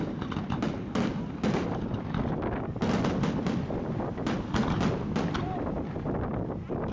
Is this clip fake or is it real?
real